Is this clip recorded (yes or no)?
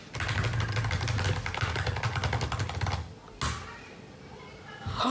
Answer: yes